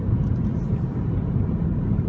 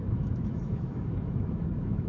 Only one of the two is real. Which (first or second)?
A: first